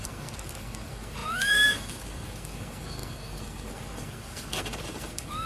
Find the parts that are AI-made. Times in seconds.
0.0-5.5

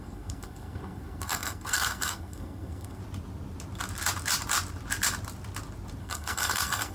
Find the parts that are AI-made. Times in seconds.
0.0-3.0; 6.0-6.9

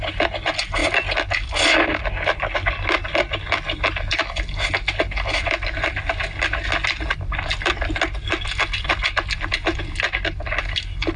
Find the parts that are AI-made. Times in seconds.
none

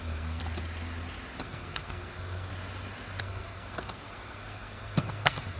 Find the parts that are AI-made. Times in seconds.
0.0-0.4; 1.4-2.5; 3.2-5.6

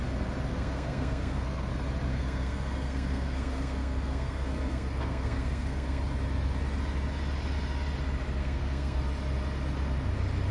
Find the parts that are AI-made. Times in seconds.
0.5-1.7; 2.1-6.0; 8.4-9.0

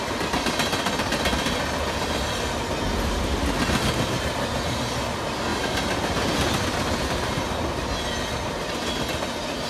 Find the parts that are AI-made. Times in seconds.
none

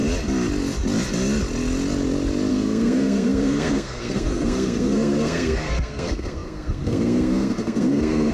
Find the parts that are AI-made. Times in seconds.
2.5-8.3

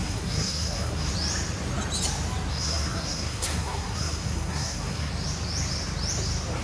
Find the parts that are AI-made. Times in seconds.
0.0-1.1; 2.5-5.1